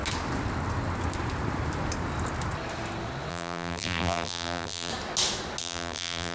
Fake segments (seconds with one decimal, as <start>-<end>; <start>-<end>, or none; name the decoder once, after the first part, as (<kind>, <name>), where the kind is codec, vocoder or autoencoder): 3.3-4.9 (vocoder, BigVGAN v2); 5.6-6.3